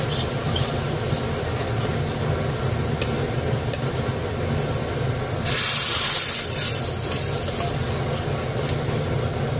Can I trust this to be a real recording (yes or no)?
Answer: yes